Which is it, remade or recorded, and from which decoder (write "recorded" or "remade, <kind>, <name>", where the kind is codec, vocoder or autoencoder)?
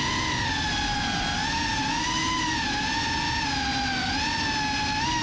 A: recorded